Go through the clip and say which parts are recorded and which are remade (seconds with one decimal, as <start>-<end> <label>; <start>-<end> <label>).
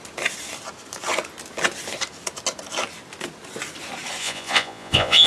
0.0-4.2 recorded; 4.2-5.3 remade